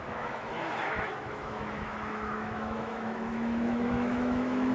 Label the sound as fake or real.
fake